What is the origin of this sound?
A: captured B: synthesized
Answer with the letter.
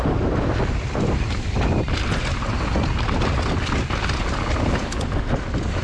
A